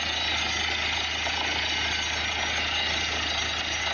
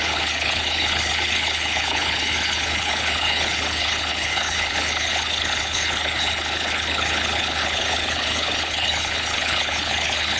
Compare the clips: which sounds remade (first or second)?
second